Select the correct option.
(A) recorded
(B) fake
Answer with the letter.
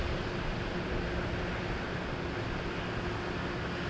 A